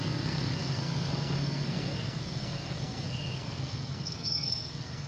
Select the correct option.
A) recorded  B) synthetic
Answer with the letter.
B